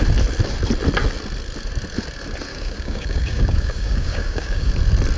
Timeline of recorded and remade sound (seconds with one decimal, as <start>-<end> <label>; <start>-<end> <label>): 0.0-2.5 recorded; 2.5-4.7 remade; 4.7-5.2 recorded